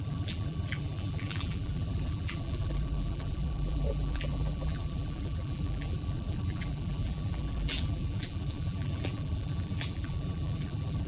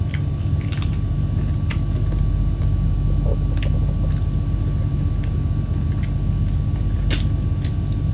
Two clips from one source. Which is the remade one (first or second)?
first